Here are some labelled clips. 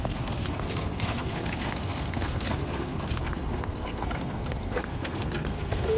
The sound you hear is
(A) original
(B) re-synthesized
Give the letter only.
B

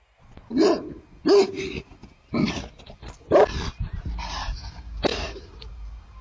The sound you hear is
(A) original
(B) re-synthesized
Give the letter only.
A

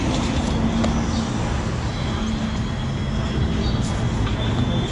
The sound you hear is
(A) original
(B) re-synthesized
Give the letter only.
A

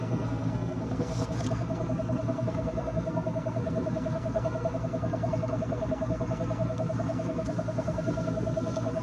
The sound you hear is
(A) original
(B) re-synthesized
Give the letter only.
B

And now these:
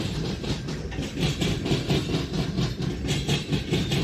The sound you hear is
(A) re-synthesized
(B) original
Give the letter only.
B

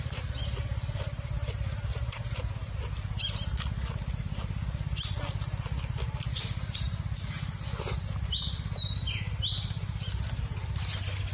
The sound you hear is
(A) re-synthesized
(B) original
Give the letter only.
B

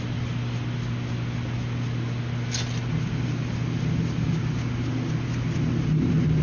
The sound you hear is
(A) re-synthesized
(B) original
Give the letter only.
B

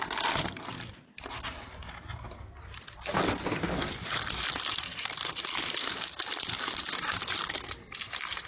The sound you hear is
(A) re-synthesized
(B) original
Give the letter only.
B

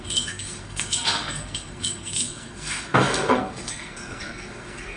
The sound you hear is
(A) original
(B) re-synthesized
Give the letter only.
B